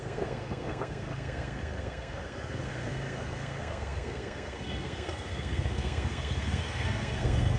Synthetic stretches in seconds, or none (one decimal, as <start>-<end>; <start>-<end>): 0.0-7.6